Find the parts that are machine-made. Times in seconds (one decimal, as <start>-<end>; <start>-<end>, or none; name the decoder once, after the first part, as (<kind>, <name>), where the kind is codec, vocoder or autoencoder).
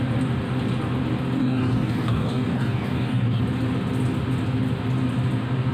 1.4-3.4 (codec, DAC)